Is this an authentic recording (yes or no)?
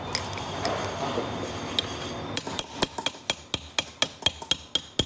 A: yes